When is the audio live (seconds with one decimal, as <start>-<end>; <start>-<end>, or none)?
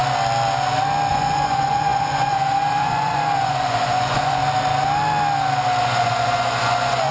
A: 0.0-1.1; 4.4-5.8